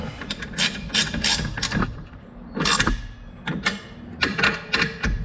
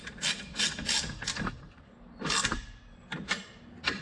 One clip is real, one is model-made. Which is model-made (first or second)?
second